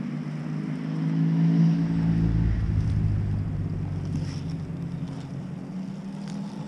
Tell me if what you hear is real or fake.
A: real